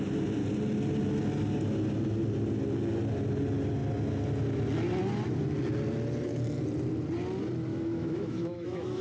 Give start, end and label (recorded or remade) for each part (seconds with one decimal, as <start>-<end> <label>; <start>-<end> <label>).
0.0-7.7 recorded; 7.7-9.0 remade